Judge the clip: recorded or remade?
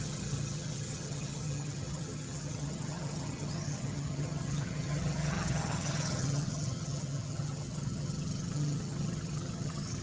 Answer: remade